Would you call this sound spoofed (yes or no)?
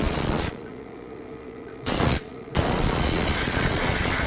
yes